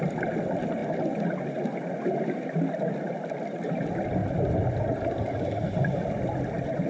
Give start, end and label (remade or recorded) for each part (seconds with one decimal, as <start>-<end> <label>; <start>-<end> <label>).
0.0-6.9 recorded